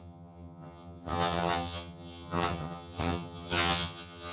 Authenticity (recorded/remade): remade